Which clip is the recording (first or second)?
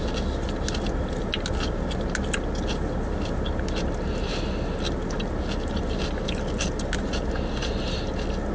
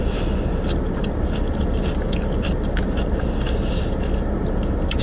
first